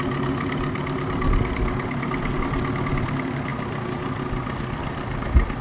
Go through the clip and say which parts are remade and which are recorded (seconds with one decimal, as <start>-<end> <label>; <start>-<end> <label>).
0.0-5.6 recorded